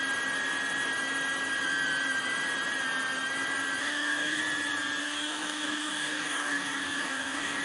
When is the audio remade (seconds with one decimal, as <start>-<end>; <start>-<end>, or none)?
3.8-4.4; 5.0-7.6